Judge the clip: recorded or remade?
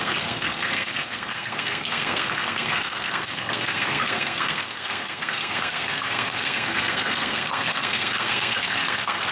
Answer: remade